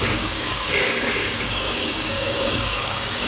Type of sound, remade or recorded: remade